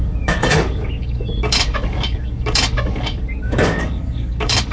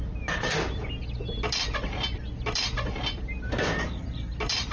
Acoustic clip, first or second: second